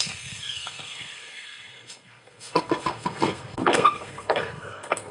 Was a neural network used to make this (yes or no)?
yes